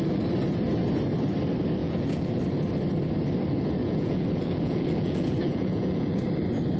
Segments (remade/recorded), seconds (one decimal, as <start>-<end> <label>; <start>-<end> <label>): 0.0-1.8 recorded; 1.8-2.4 remade; 2.4-3.8 recorded; 3.8-6.2 remade; 6.2-6.8 recorded